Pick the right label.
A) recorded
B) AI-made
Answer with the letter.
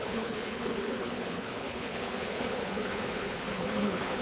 B